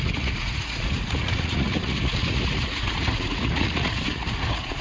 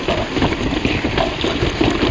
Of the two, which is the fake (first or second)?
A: first